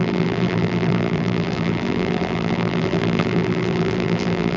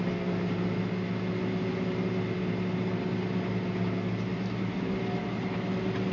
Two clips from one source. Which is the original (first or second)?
second